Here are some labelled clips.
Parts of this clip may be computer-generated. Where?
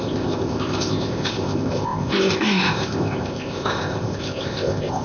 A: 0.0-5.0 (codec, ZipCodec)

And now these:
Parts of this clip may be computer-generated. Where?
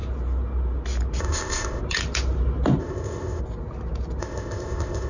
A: 1.2-1.8 (codec, ZipCodec); 2.8-3.4; 4.2-5.1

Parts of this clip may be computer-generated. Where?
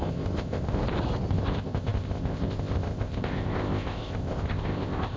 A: 0.0-0.8 (codec, ZipCodec); 1.3-5.2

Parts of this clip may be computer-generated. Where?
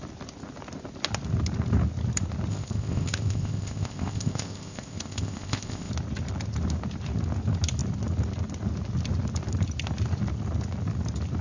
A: 2.5-5.9 (codec, ZipCodec)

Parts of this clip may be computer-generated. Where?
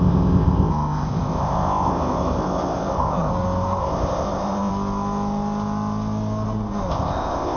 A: 0.0-3.3 (codec, ZipCodec); 3.8-4.7; 6.9-7.6